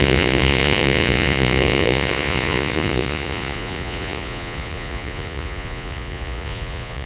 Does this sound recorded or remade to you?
remade